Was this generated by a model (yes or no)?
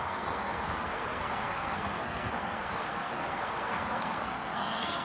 yes